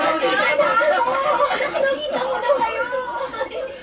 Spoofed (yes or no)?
no